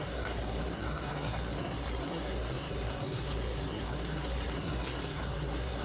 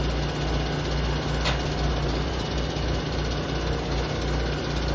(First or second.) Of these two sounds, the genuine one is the second